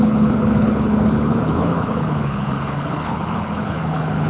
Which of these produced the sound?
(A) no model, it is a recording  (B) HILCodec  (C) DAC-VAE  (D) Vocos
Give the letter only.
B